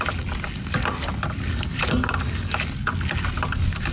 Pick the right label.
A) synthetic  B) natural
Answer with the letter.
B